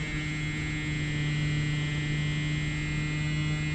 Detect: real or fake real